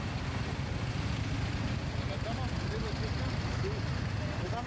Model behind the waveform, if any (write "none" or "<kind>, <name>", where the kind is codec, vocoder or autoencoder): none